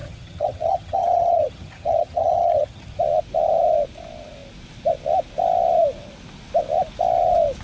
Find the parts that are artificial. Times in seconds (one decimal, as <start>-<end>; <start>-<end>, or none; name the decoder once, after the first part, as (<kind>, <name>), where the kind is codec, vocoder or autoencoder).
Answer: 0.0-3.0 (vocoder, HiFi-GAN)